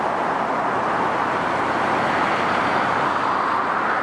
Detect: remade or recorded recorded